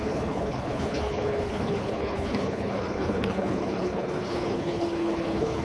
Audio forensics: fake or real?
fake